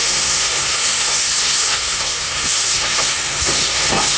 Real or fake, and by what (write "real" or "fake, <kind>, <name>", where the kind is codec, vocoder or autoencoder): fake, codec, SNAC